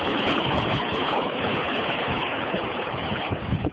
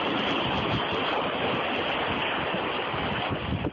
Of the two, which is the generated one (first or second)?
first